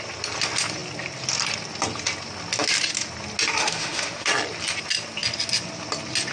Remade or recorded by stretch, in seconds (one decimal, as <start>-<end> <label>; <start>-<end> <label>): 0.0-3.6 recorded; 3.6-4.3 remade; 4.3-6.3 recorded